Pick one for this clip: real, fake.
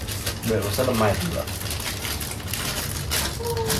real